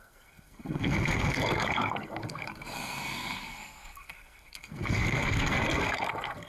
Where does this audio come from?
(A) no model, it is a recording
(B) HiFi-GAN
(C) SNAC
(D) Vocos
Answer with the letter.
C